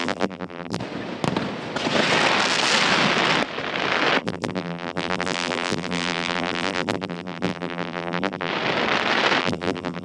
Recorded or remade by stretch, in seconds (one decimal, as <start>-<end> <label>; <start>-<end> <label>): 0.0-0.8 remade; 0.8-4.2 recorded; 4.2-8.5 remade; 8.5-9.4 recorded; 9.4-10.0 remade